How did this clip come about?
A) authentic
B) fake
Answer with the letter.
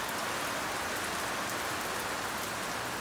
A